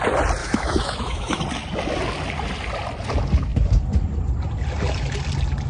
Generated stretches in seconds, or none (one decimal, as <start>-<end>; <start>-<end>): 0.4-1.4